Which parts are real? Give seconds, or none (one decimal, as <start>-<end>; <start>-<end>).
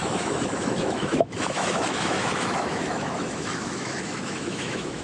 none